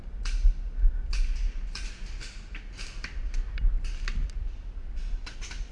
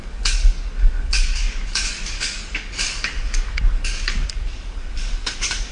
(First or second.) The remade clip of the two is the second